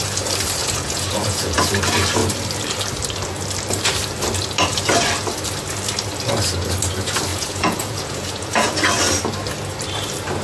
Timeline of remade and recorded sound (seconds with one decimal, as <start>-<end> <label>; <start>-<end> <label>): 0.0-0.6 recorded; 0.6-1.6 remade; 1.6-7.3 recorded; 7.3-8.7 remade; 8.7-10.4 recorded